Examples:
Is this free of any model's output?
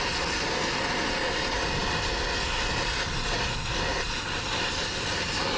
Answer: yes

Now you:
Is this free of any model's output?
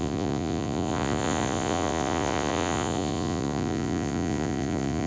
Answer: no